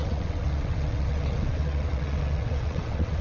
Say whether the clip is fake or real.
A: fake